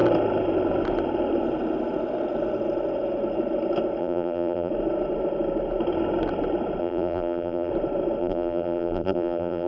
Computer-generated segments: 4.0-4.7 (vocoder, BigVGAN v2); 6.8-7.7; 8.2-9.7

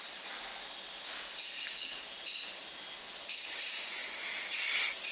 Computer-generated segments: 0.0-0.5 (vocoder, BigVGAN v2); 3.6-4.0